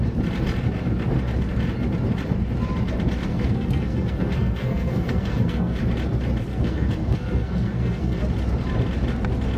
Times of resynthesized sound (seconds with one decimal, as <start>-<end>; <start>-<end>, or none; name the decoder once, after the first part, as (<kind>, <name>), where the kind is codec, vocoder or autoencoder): 3.3-5.8 (codec, SNAC); 6.5-8.2